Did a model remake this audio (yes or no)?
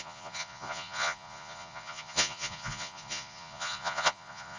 yes